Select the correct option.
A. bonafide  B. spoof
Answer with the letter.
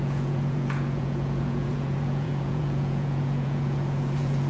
B